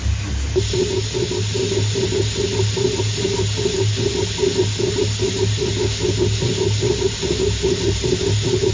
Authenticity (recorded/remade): recorded